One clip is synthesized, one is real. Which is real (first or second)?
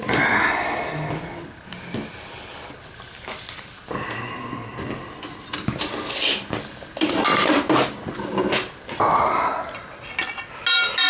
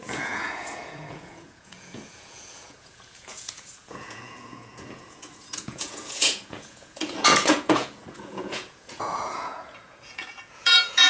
first